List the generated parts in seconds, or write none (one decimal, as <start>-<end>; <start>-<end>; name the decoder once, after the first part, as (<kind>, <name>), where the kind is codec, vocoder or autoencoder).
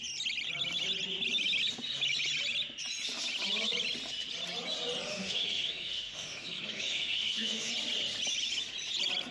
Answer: 5.1-7.7 (autoencoder, DAC-VAE)